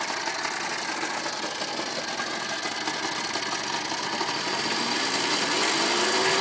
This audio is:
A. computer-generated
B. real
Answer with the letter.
B